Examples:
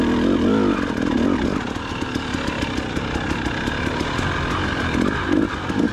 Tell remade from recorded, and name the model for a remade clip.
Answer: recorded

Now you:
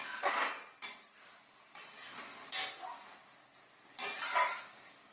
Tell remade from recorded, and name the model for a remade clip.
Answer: recorded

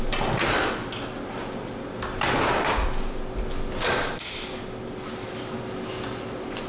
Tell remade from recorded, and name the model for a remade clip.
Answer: recorded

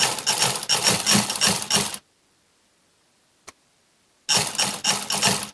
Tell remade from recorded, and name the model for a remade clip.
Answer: recorded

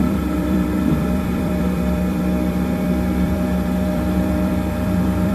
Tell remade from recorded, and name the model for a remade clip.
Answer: remade, vocoder, BigVGAN v2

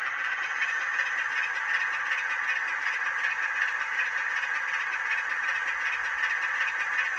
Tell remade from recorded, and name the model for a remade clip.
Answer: recorded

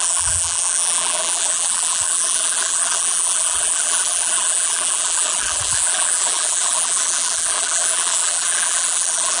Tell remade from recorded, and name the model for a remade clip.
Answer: remade, vocoder, BigVGAN v2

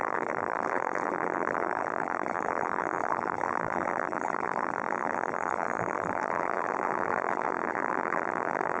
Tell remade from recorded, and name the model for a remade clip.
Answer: remade, vocoder, BigVGAN v2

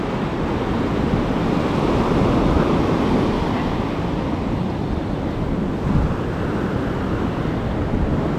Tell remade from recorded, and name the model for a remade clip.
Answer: recorded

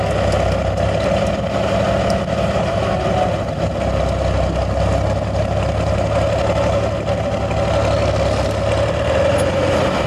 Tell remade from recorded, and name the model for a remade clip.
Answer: recorded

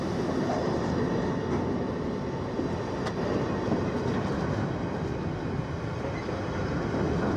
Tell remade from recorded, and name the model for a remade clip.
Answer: recorded